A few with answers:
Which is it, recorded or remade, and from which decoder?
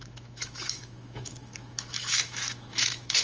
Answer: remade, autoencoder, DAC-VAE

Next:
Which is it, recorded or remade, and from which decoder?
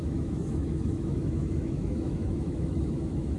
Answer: remade, autoencoder, DAC-VAE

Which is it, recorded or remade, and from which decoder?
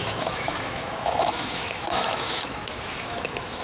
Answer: remade, autoencoder, DAC-VAE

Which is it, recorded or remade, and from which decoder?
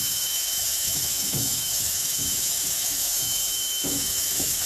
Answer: remade, autoencoder, DAC-VAE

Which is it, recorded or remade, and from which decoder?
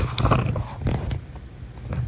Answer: recorded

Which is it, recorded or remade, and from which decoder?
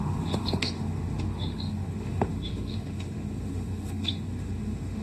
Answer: remade, autoencoder, DAC-VAE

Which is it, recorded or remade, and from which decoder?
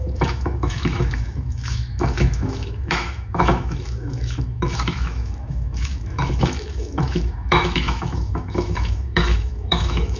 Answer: remade, autoencoder, DAC-VAE